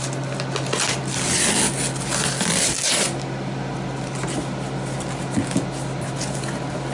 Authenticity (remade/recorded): recorded